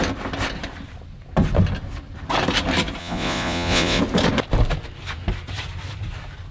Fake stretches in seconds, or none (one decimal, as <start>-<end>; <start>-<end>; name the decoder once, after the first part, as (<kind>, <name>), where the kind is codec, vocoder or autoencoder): 3.0-4.0 (vocoder, Vocos)